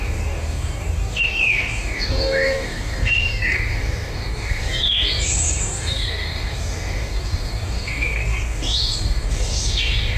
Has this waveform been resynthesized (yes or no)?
yes